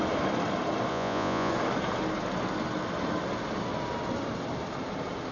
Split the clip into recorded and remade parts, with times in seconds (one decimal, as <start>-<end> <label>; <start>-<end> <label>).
0.0-0.9 recorded; 0.9-1.5 remade; 1.5-5.3 recorded